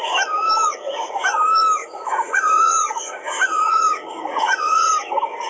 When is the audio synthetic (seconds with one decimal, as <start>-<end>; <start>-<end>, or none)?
1.8-4.9